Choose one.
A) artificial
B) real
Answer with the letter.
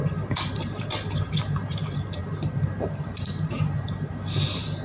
A